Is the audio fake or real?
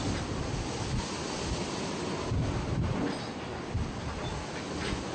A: real